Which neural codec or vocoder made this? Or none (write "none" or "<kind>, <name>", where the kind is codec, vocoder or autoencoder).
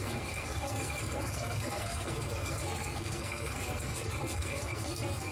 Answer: codec, SNAC